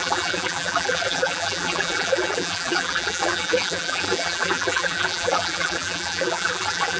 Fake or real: fake